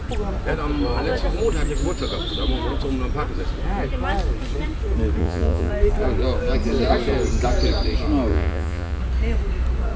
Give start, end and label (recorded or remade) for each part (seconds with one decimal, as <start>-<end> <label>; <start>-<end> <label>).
0.0-5.2 recorded; 5.2-5.7 remade; 5.7-8.3 recorded; 8.3-9.0 remade; 9.0-10.0 recorded